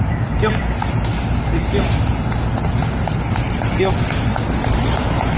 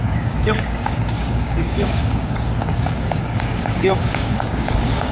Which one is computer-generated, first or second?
second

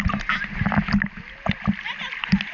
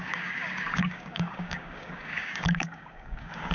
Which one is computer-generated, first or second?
second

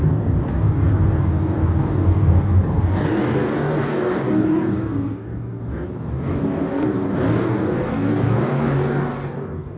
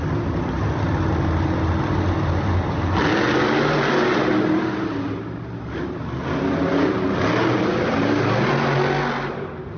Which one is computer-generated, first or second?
first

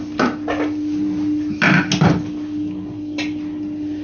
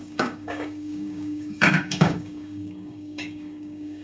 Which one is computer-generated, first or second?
second